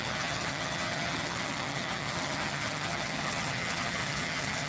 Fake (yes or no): yes